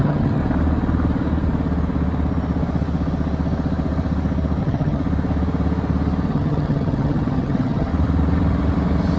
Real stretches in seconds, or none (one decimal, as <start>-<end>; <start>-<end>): 0.4-4.6; 5.0-6.3; 7.9-9.2